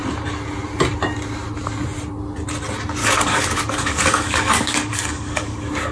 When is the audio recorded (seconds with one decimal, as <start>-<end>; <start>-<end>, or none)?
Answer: 0.0-3.0